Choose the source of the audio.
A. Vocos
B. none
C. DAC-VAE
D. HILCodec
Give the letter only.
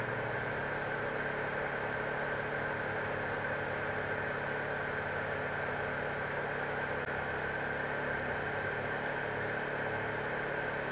B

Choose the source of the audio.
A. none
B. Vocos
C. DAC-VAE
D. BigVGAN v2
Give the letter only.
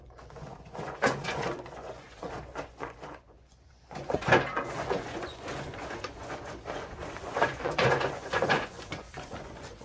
B